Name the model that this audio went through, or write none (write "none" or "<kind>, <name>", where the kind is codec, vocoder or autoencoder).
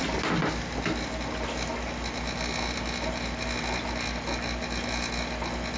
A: none